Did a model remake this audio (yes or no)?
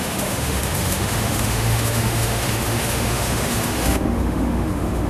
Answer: yes